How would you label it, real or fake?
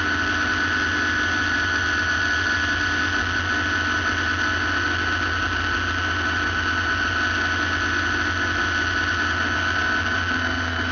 real